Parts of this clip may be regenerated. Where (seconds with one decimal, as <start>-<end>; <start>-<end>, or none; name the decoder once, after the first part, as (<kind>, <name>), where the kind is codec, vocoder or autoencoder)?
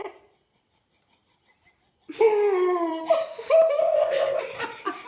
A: 3.8-4.4 (codec, ZipCodec)